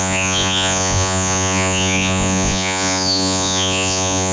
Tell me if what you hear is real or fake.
fake